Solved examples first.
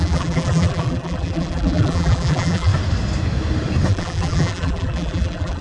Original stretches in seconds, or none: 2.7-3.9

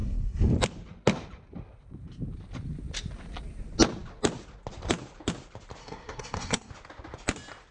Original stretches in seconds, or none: 0.5-5.8; 6.7-7.7

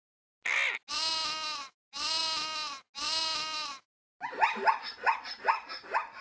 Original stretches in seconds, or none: 0.0-6.2

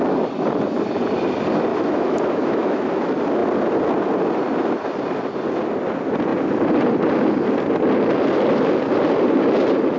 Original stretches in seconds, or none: 0.0-1.7; 2.9-10.0

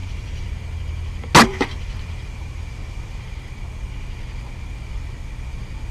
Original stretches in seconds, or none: 0.5-1.5; 3.2-5.9

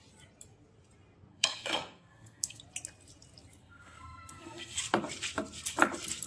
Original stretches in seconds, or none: 0.0-1.3; 2.6-3.6; 4.8-6.3